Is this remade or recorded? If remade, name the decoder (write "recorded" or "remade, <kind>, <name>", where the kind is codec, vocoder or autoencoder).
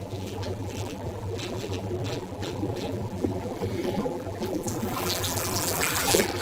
remade, vocoder, BigVGAN v2